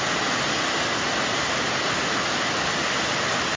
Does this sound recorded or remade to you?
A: recorded